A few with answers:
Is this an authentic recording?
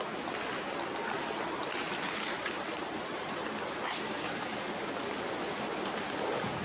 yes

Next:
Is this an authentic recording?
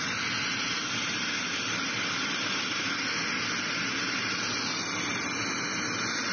yes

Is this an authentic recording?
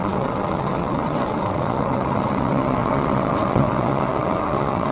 no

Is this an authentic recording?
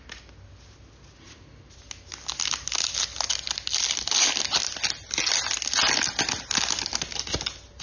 yes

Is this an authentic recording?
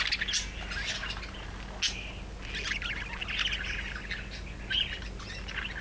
yes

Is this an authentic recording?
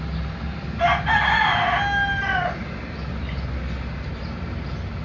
yes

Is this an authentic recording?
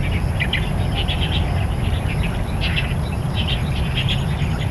yes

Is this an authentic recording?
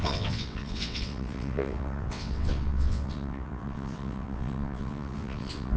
no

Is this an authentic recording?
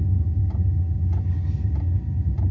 yes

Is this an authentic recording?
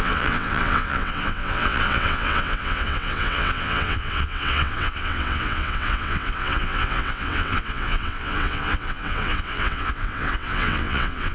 no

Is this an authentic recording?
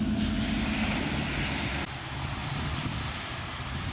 yes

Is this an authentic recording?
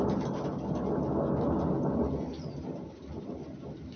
yes